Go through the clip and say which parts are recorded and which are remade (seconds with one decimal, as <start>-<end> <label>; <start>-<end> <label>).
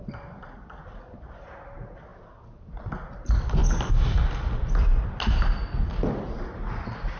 0.0-7.2 recorded